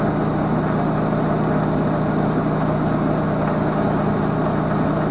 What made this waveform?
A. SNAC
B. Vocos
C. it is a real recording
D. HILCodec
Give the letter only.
C